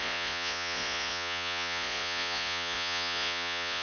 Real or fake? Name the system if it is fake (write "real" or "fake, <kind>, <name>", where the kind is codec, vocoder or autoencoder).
fake, vocoder, Vocos